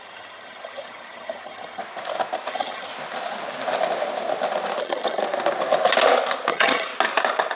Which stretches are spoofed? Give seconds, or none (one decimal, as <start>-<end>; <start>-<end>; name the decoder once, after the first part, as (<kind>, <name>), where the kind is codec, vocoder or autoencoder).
0.0-1.8 (vocoder, HiFi-GAN); 2.5-2.9; 4.8-5.2; 6.5-6.9